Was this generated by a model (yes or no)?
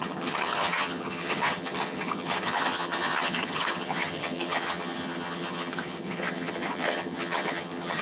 yes